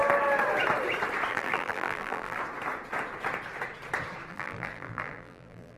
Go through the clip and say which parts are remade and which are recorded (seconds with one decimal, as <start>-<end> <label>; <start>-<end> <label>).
0.0-1.3 recorded; 1.3-2.4 remade; 2.4-4.3 recorded; 4.3-5.8 remade